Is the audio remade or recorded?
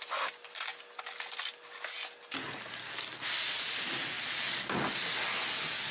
recorded